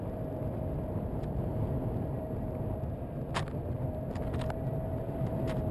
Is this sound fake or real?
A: real